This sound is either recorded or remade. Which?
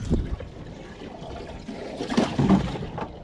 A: remade